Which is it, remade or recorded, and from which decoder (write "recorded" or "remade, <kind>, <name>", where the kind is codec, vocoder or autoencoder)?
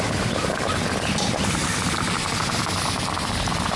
remade, vocoder, BigVGAN v2